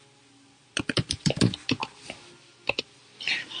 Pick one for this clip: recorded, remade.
recorded